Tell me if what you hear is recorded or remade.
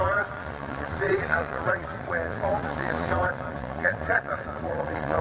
remade